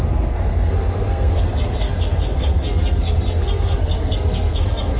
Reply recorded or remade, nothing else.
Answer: remade